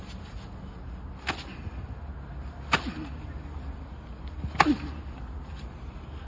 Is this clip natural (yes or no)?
yes